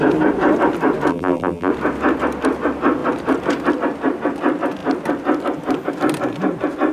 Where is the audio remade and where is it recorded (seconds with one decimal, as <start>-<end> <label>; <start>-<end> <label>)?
0.0-1.1 recorded; 1.1-1.7 remade; 1.7-6.9 recorded